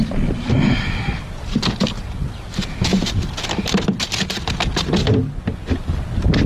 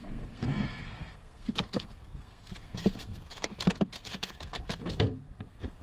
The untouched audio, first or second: first